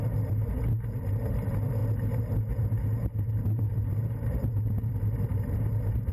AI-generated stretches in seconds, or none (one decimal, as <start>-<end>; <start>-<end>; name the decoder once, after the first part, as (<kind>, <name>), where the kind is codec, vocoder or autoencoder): 0.0-6.1 (vocoder, BigVGAN v2)